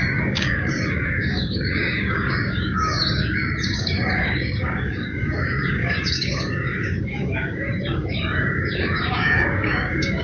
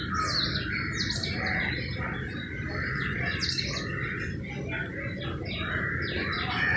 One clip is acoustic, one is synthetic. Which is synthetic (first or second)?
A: first